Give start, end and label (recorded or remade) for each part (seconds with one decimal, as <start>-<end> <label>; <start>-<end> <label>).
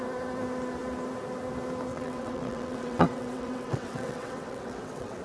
0.0-1.9 recorded; 1.9-5.2 remade